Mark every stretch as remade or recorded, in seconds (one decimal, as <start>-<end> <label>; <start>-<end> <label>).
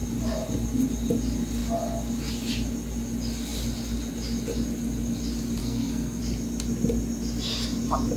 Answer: 0.0-5.6 recorded; 5.6-6.2 remade; 6.2-8.2 recorded